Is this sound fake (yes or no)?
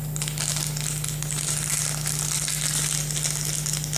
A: no